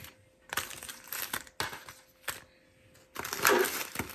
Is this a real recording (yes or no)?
yes